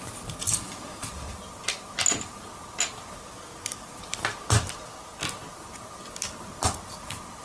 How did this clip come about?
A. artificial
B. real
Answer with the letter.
B